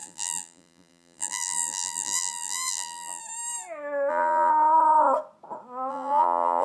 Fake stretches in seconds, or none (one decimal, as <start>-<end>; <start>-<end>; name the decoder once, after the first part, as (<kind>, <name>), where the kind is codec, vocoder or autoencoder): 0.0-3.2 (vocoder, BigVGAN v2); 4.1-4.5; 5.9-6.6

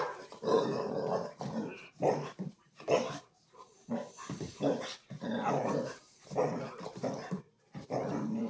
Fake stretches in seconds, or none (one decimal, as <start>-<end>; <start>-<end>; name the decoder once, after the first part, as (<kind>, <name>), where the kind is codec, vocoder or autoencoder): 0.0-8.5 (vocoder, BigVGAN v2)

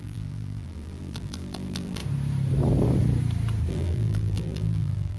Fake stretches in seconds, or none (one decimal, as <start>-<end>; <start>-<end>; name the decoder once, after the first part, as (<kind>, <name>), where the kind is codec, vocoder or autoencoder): 0.0-2.0 (vocoder, BigVGAN v2); 3.7-5.2

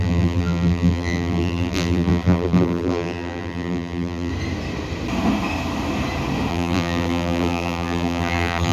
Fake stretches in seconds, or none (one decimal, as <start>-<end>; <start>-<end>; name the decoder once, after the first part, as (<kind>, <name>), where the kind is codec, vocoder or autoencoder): 0.0-4.3 (vocoder, BigVGAN v2); 6.5-8.7

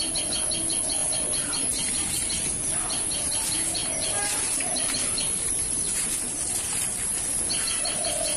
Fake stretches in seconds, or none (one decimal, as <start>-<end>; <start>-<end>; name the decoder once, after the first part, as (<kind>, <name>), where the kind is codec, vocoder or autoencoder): 1.0-2.2 (vocoder, BigVGAN v2); 3.8-5.8